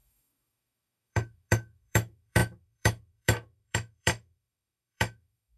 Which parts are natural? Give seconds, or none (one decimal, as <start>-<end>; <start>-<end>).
none